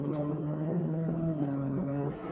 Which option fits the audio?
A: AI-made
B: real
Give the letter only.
A